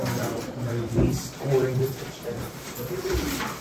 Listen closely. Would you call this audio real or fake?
fake